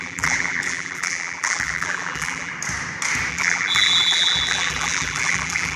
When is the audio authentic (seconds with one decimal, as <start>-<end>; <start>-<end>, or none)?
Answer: 2.5-3.3